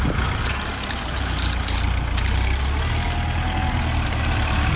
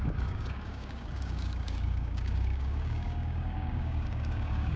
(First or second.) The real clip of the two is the first